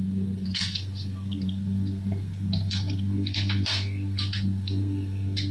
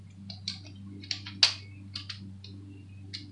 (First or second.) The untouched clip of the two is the second